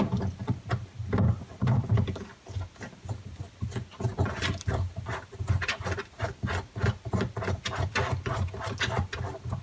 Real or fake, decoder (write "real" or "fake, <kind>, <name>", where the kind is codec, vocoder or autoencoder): real